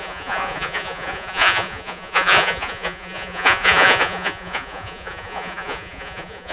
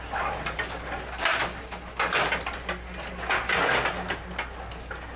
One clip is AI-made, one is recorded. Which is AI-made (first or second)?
first